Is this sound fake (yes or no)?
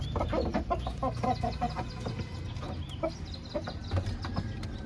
no